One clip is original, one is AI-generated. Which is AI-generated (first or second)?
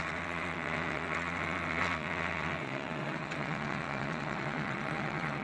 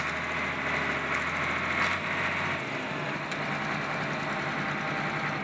first